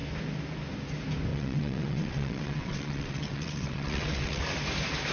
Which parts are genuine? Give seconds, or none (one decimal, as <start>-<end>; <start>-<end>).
0.0-1.3; 4.4-5.1